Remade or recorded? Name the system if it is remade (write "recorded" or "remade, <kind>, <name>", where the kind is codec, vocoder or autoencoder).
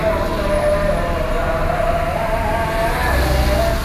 recorded